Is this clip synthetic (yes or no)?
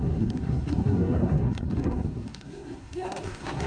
yes